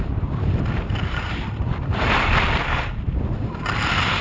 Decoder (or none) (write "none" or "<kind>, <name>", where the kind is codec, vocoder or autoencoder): none